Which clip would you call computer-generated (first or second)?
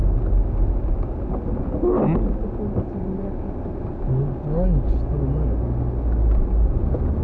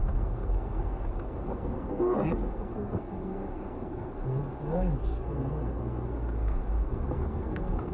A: second